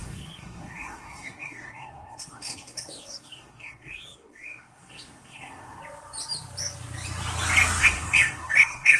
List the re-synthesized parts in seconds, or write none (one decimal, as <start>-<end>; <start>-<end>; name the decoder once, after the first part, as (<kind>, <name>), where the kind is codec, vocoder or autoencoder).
0.0-5.8 (codec, SNAC); 7.8-9.0